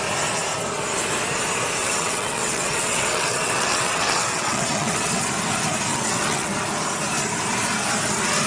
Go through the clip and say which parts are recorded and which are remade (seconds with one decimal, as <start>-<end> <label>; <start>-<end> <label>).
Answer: 0.0-1.8 recorded; 1.8-5.1 remade; 5.1-5.9 recorded; 5.9-6.5 remade; 6.5-8.5 recorded